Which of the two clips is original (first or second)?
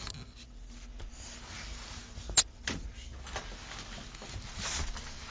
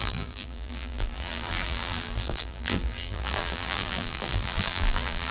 first